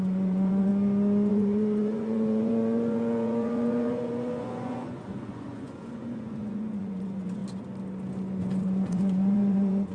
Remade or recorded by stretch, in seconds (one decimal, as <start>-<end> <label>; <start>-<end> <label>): 0.0-0.7 remade; 0.7-1.3 recorded; 1.3-7.4 remade; 7.4-8.4 recorded; 8.4-9.9 remade